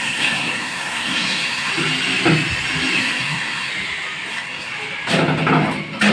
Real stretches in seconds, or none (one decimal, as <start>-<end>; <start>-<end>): 1.7-3.0; 3.7-4.3; 4.7-6.1